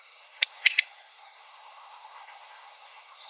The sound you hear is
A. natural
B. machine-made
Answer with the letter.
B